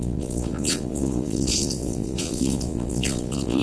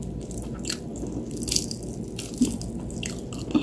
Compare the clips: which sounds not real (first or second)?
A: first